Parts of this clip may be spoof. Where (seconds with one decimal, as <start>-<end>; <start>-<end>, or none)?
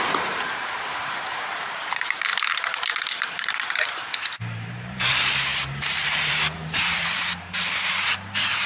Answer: 0.0-2.3; 3.2-8.7